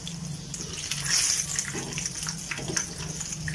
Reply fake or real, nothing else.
real